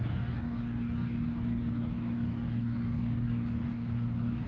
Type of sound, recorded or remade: remade